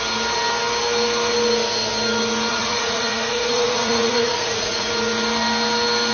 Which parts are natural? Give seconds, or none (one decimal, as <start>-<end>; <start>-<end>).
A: 0.0-2.5; 4.9-6.1